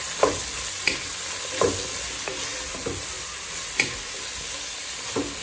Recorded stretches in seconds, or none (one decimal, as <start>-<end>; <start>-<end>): 0.0-5.4